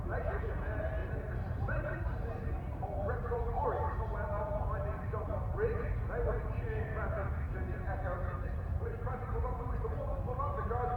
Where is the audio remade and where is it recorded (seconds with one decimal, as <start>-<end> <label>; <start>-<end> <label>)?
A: 0.0-1.0 recorded; 1.0-4.0 remade; 4.0-8.3 recorded; 8.3-9.3 remade; 9.3-11.0 recorded